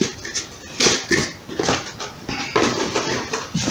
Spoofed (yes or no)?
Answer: no